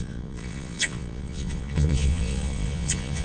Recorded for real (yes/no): no